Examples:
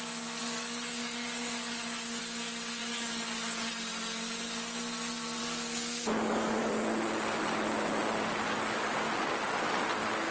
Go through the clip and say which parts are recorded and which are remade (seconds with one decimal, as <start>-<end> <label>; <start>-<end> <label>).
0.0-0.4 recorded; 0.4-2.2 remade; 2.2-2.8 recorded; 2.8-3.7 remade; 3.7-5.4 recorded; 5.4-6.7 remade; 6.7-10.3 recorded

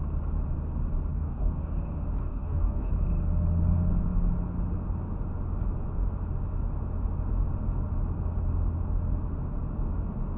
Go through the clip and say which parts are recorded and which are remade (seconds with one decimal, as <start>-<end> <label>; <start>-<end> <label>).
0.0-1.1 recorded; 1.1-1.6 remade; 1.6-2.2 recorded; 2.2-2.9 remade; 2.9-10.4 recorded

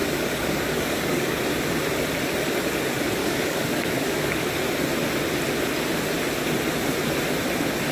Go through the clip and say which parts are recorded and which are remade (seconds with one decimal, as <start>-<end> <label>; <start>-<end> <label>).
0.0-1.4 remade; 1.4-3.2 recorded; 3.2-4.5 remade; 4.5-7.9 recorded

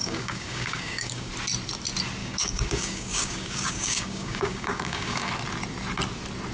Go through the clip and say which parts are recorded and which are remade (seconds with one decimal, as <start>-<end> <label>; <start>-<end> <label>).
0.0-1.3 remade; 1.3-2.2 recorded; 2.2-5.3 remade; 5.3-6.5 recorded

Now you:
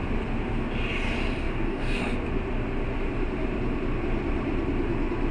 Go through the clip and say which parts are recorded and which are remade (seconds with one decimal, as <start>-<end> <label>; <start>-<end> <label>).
0.0-1.4 recorded; 1.4-2.0 remade; 2.0-5.3 recorded

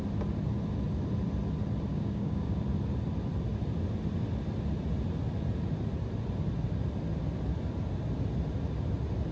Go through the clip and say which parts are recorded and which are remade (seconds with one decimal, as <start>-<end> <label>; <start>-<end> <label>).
0.0-1.9 recorded; 1.9-2.6 remade; 2.6-9.3 recorded